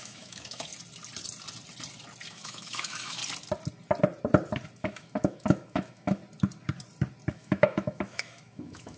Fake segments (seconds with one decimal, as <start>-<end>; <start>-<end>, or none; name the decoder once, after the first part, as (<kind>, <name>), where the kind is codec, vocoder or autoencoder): 0.0-0.7 (autoencoder, DAC-VAE); 2.3-3.2; 4.8-6.2; 7.3-9.0